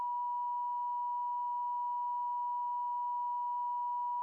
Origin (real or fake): real